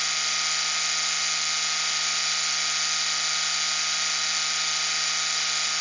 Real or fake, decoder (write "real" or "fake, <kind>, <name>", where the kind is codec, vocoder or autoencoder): real